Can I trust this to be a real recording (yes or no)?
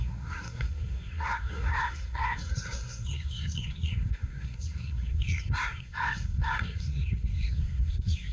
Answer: no